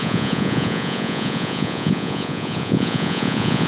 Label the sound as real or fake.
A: fake